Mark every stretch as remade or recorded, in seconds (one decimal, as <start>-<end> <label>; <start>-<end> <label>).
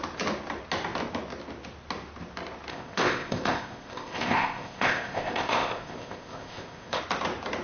0.0-2.7 recorded; 2.7-7.0 remade; 7.0-7.6 recorded